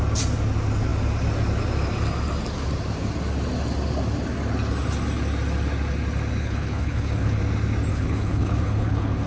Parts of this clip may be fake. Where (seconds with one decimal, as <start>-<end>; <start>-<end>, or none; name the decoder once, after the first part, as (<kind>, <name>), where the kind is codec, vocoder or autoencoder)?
6.4-7.4 (codec, HILCodec); 7.9-9.3

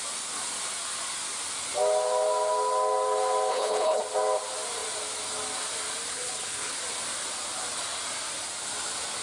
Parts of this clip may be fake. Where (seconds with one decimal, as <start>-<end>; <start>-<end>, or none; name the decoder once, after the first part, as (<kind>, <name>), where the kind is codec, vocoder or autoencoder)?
3.5-4.0 (codec, HILCodec); 6.1-6.7

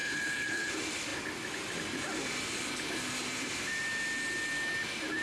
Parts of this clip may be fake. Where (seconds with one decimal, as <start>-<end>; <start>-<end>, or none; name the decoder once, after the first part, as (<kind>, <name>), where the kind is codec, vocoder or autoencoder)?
0.0-0.7 (codec, HILCodec)

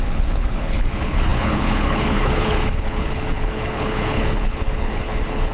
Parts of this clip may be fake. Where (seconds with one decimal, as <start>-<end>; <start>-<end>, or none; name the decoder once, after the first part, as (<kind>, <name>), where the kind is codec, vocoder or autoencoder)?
0.0-5.5 (codec, HILCodec)

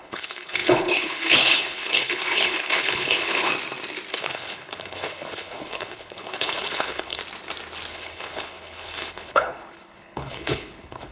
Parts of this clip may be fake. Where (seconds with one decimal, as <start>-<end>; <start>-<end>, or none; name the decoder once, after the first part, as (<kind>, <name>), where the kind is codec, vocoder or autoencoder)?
0.0-3.5 (codec, HILCodec); 4.1-7.2; 7.9-11.1